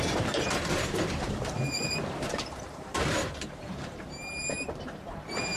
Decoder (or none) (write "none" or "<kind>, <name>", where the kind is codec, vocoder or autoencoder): vocoder, BigVGAN v2